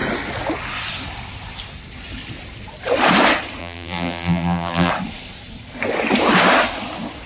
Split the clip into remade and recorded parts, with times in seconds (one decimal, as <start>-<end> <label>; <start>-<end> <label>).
0.0-3.6 recorded; 3.6-4.9 remade; 4.9-7.3 recorded